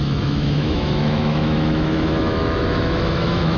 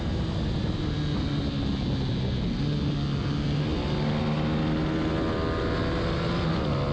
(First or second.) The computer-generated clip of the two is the first